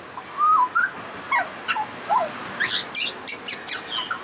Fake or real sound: real